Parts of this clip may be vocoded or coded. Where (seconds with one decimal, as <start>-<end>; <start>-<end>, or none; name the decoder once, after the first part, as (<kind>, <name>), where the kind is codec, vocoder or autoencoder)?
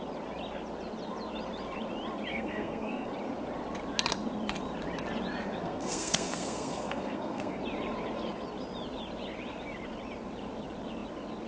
2.3-3.1 (codec, SNAC); 5.6-7.6